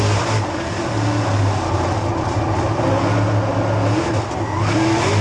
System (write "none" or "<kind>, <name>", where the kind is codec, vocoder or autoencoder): none